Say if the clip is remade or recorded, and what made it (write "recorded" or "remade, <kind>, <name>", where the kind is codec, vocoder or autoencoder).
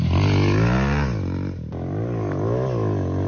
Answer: recorded